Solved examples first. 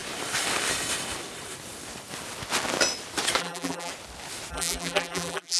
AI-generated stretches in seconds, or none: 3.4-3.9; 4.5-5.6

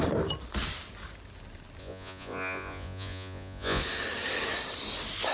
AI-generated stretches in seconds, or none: 1.8-3.8

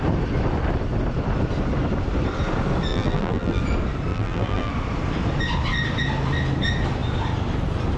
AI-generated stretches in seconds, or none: 2.9-3.6; 4.1-4.7

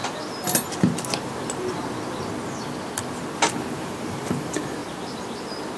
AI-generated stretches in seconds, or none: 3.5-4.8